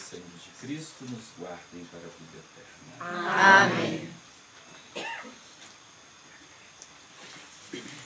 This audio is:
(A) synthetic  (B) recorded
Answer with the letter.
B